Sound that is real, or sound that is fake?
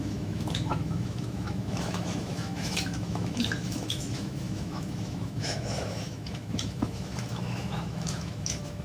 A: fake